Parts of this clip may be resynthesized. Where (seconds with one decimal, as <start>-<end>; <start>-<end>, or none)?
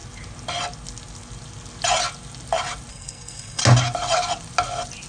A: 2.9-3.6